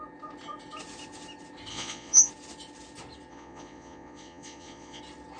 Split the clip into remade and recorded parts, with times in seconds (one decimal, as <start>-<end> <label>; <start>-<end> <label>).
0.0-1.7 recorded; 1.7-2.3 remade; 2.3-3.3 recorded; 3.3-5.0 remade; 5.0-5.4 recorded